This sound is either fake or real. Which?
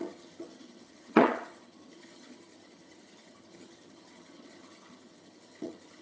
fake